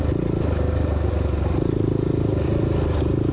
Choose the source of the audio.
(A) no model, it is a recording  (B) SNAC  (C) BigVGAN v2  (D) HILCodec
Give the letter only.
A